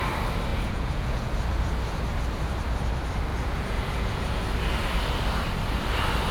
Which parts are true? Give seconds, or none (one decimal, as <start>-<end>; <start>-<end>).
0.0-0.5; 1.3-3.3; 4.4-6.3